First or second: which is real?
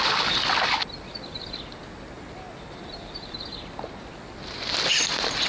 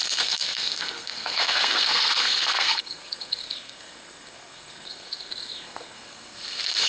first